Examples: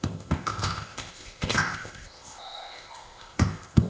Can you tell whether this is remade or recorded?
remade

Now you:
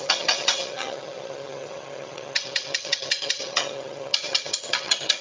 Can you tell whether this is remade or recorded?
remade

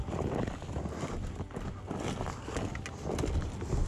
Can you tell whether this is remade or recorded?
recorded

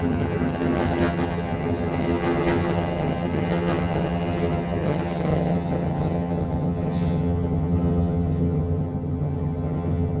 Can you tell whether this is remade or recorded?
remade